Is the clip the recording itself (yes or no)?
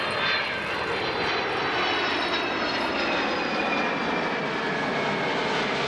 yes